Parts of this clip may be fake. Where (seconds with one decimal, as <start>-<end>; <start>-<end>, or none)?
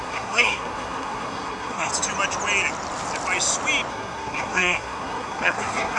0.0-1.9; 3.9-6.0